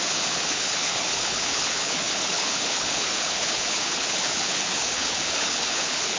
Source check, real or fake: fake